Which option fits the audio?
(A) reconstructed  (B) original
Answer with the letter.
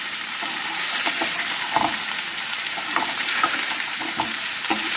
A